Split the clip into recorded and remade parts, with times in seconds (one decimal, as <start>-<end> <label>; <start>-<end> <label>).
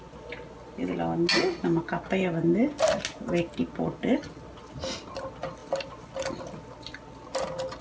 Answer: 0.0-7.8 recorded